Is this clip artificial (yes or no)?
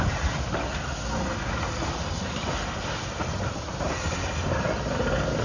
no